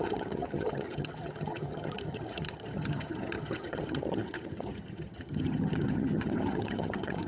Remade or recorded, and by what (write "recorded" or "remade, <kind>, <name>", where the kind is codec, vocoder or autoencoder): remade, vocoder, HiFi-GAN